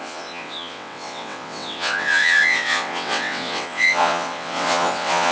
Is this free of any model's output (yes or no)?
no